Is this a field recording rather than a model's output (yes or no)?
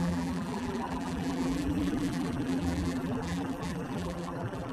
no